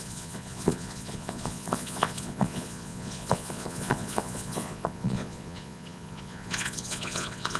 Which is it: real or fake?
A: fake